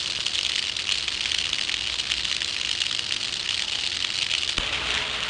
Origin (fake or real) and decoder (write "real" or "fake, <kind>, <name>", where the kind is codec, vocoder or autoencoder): real